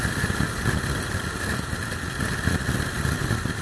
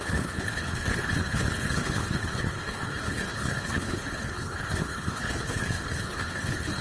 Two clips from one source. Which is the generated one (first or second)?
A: second